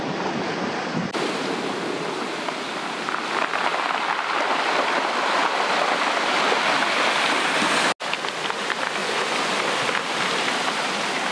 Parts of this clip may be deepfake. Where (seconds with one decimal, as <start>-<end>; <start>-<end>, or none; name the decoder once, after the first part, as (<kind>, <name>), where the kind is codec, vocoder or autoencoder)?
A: 9.0-9.6 (vocoder, Vocos)